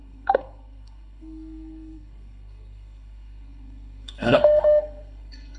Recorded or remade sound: remade